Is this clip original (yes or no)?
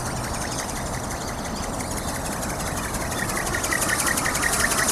yes